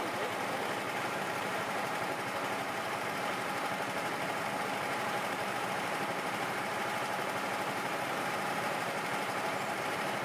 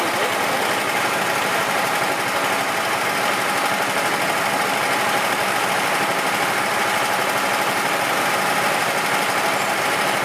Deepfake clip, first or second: first